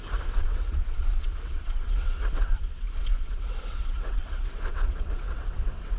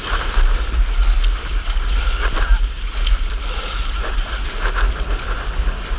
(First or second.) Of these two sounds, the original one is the second